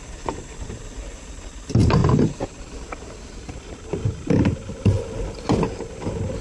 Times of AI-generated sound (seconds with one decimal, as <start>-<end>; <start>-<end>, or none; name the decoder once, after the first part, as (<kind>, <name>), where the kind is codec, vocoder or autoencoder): none